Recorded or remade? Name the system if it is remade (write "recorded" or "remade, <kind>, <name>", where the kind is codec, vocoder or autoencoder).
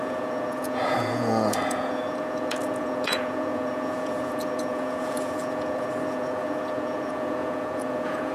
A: remade, vocoder, Vocos